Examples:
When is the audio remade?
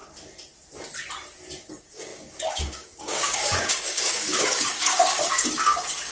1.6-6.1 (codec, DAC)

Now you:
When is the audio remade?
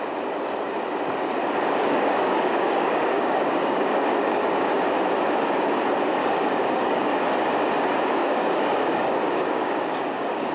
1.4-4.4 (codec, DAC); 6.2-7.1; 8.2-10.5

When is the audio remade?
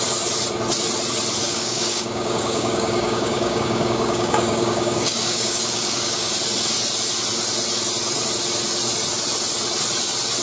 1.4-6.3 (codec, DAC)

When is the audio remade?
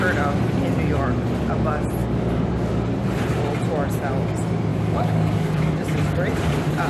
2.0-2.7 (codec, DAC); 4.7-5.7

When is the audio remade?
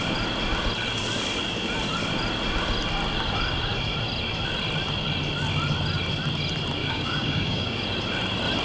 6.8-7.8 (codec, DAC)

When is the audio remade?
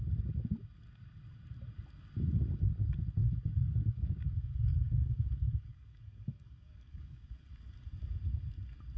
3.2-7.4 (codec, DAC)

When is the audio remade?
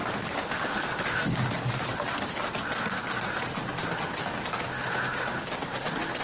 none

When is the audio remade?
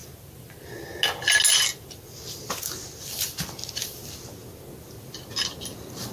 none